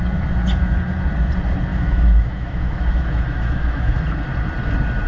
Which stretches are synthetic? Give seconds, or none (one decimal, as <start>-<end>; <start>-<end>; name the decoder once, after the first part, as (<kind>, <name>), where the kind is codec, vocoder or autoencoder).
1.7-4.0 (autoencoder, DAC-VAE)